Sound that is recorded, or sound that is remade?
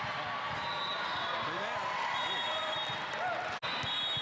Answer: recorded